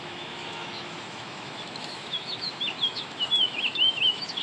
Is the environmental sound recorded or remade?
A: remade